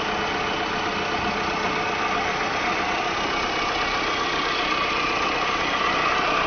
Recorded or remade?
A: recorded